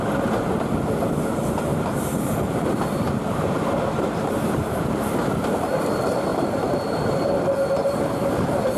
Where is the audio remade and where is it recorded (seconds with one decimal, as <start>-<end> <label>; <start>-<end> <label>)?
0.0-1.7 recorded; 1.7-5.0 remade; 5.0-6.3 recorded; 6.3-7.4 remade; 7.4-8.8 recorded